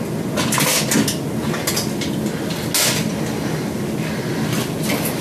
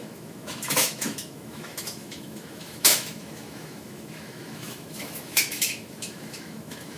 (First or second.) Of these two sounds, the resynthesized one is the second